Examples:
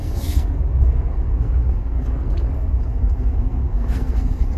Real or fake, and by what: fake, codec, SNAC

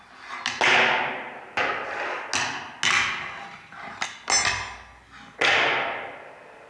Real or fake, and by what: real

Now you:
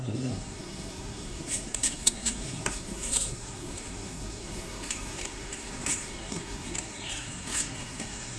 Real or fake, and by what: fake, codec, SNAC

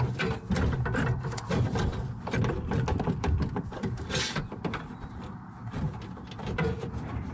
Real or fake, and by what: real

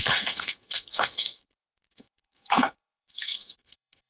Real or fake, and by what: fake, codec, SNAC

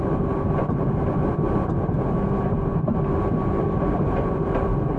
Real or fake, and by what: real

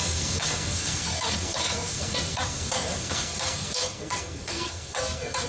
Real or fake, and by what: fake, codec, SNAC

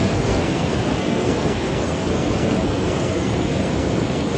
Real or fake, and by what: fake, codec, SNAC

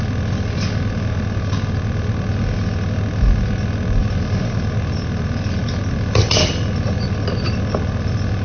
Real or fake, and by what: real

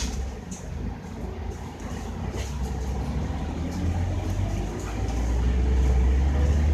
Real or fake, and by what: real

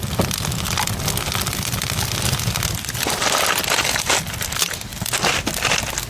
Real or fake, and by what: real